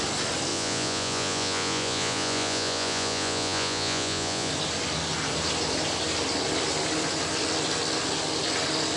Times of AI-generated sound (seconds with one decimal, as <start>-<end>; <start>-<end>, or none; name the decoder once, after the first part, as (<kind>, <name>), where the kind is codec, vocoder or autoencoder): 0.5-4.5 (vocoder, Vocos)